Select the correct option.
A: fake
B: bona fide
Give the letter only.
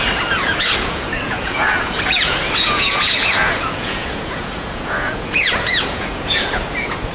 A